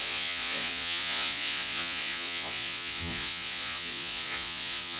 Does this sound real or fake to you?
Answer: fake